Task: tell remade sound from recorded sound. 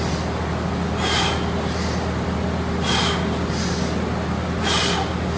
recorded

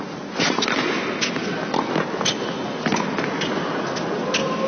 recorded